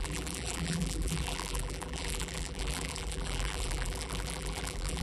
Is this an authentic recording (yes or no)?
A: no